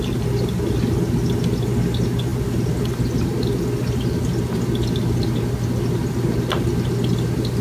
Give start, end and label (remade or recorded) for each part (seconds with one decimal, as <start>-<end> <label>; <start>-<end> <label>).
0.0-7.6 recorded